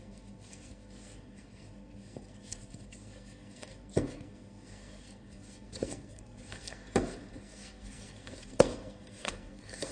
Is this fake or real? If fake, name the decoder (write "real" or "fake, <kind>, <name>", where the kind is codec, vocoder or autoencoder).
fake, codec, SNAC